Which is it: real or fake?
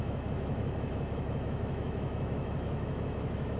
fake